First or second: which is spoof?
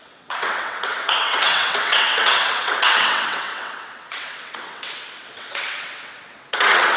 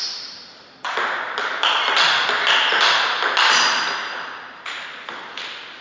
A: first